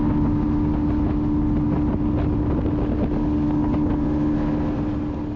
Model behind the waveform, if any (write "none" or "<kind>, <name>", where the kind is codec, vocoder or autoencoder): none